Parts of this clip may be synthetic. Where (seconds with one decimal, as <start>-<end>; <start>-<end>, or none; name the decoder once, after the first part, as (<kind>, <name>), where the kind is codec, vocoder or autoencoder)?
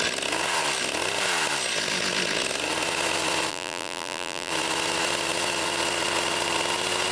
3.5-4.5 (vocoder, BigVGAN v2)